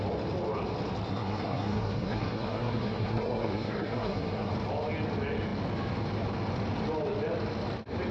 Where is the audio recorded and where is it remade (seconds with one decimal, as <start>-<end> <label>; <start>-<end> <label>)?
0.0-1.1 recorded; 1.1-4.5 remade; 4.5-8.1 recorded